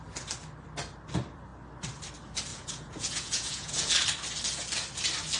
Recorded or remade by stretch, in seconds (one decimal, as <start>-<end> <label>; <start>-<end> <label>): 0.0-2.5 recorded; 2.5-3.9 remade; 3.9-5.4 recorded